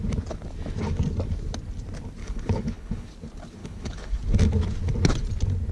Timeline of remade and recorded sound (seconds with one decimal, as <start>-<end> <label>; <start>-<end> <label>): 0.0-2.2 recorded; 2.2-3.1 remade; 3.1-3.6 recorded; 3.6-4.2 remade; 4.2-5.7 recorded